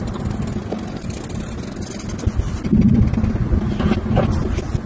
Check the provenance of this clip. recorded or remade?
recorded